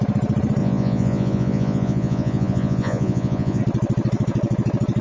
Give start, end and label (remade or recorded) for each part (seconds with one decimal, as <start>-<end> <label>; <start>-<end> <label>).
0.0-0.6 recorded; 0.6-3.6 remade; 3.6-5.0 recorded